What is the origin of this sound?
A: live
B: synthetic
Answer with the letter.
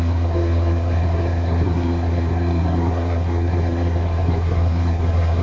B